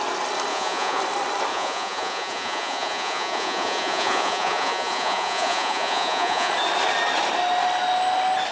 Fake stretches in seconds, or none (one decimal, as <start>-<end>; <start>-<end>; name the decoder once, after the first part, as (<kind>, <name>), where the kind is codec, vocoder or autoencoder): 0.5-1.0 (vocoder, Vocos); 1.5-6.5